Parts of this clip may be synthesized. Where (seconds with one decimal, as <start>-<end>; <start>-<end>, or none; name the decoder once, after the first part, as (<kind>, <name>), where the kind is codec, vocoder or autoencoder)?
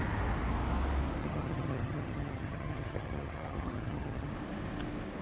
1.2-4.3 (vocoder, HiFi-GAN)